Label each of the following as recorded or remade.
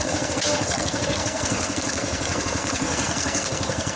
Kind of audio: remade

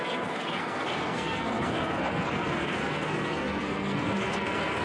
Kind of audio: remade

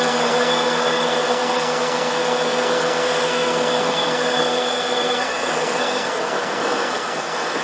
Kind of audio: remade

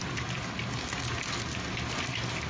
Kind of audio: recorded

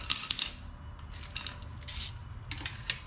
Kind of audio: recorded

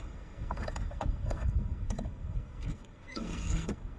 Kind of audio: remade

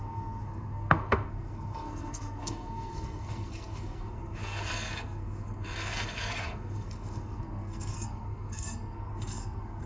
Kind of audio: remade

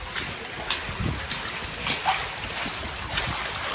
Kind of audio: recorded